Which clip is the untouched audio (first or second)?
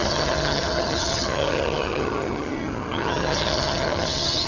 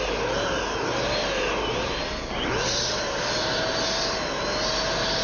second